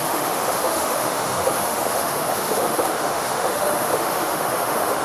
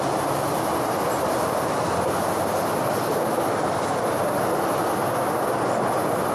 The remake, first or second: first